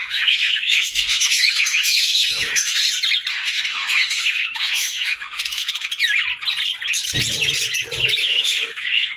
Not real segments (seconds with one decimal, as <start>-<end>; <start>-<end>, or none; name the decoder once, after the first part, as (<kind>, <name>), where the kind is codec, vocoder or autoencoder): 0.0-2.8 (autoencoder, DAC-VAE); 3.3-5.9; 8.2-9.2